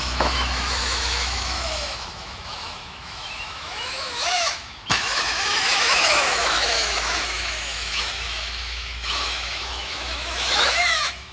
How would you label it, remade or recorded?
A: remade